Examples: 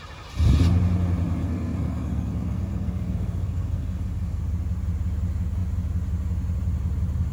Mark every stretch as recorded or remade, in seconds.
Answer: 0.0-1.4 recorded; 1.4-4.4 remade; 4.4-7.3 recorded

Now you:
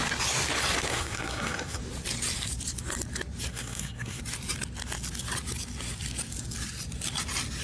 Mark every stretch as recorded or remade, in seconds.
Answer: 0.0-0.9 recorded; 0.9-1.8 remade; 1.8-3.5 recorded; 3.5-4.2 remade; 4.2-7.6 recorded

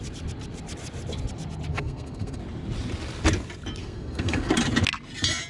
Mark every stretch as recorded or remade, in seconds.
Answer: 0.0-1.7 recorded; 1.7-2.4 remade; 2.4-3.8 recorded; 3.8-4.5 remade; 4.5-5.5 recorded

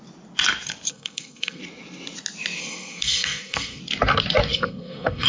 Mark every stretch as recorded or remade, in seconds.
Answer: 0.0-0.9 recorded; 0.9-1.6 remade; 1.6-2.6 recorded; 2.6-3.8 remade; 3.8-4.5 recorded; 4.5-5.3 remade

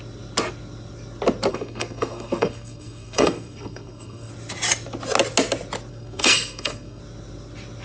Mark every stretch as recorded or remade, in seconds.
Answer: 0.0-1.5 recorded; 1.5-4.3 remade; 4.3-5.9 recorded; 5.9-7.0 remade; 7.0-7.8 recorded

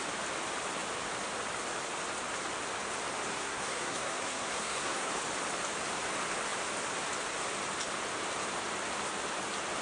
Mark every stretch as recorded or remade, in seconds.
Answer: 0.0-3.3 recorded; 3.3-5.1 remade; 5.1-9.8 recorded